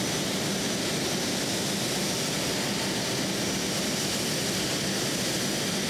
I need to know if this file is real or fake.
real